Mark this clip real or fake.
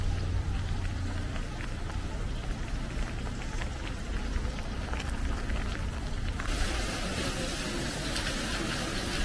fake